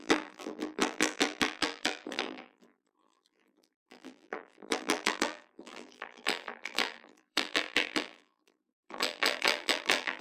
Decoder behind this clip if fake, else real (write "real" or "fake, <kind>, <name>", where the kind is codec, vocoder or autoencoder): fake, vocoder, BigVGAN v2